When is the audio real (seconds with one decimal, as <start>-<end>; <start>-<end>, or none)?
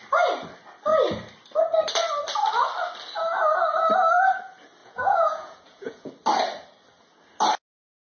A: 0.0-4.8; 6.1-8.0